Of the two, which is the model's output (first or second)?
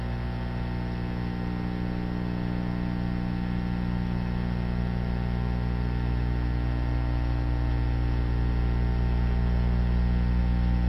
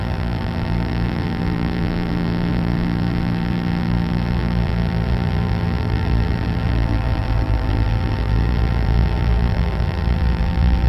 second